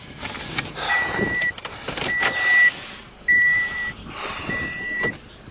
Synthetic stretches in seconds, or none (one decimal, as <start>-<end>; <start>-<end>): 0.5-2.0; 3.3-5.5